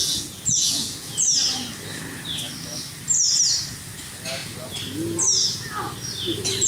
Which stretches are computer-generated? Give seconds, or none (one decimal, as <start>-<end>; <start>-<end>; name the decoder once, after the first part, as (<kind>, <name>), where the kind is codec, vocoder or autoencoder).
0.0-1.2 (vocoder, Vocos)

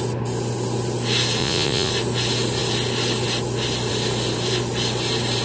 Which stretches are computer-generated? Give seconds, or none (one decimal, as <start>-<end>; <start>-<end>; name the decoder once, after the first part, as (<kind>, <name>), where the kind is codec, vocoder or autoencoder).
1.4-1.9 (vocoder, Vocos)

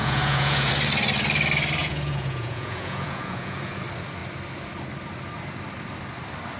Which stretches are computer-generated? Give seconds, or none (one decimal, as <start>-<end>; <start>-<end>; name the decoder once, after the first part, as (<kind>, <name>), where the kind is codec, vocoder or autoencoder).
0.0-0.7 (vocoder, Vocos); 1.8-3.8

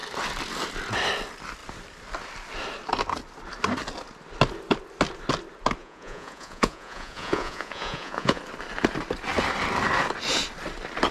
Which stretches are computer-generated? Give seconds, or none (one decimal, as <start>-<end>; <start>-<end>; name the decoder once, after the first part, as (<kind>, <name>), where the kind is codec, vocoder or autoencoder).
5.8-8.4 (vocoder, Vocos)